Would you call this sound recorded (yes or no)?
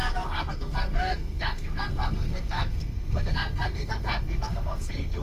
no